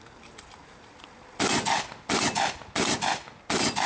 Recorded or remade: recorded